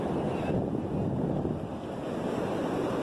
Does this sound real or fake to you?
real